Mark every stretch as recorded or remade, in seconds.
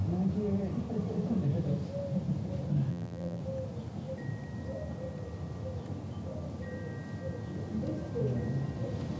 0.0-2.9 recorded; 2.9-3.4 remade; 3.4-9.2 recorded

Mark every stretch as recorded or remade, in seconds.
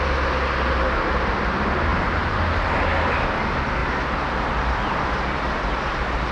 0.0-1.9 recorded; 1.9-2.5 remade; 2.5-3.8 recorded; 3.8-4.3 remade; 4.3-6.3 recorded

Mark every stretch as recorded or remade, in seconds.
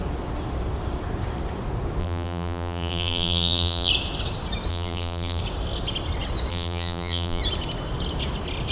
0.0-2.0 recorded; 2.0-3.9 remade; 3.9-4.7 recorded; 4.7-5.4 remade; 5.4-6.5 recorded; 6.5-7.4 remade; 7.4-8.7 recorded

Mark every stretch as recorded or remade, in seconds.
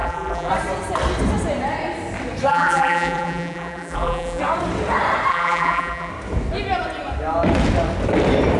0.0-0.5 remade; 0.5-2.5 recorded; 2.5-4.4 remade; 4.4-5.3 recorded; 5.3-6.1 remade; 6.1-8.6 recorded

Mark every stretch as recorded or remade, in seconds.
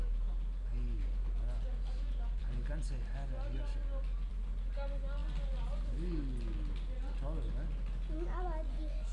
0.0-9.1 recorded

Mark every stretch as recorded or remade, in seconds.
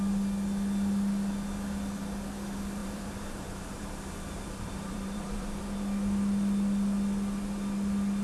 0.0-2.8 recorded; 2.8-5.6 remade; 5.6-8.2 recorded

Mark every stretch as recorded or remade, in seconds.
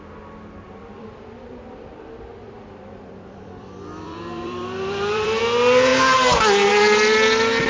0.0-0.8 recorded; 0.8-5.4 remade; 5.4-7.7 recorded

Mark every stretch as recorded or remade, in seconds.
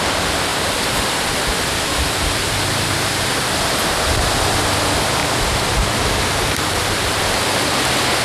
0.0-0.5 recorded; 0.5-4.1 remade; 4.1-5.2 recorded; 5.2-7.2 remade; 7.2-8.2 recorded